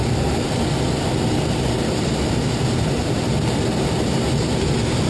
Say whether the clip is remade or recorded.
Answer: remade